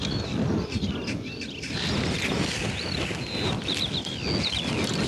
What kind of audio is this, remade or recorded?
recorded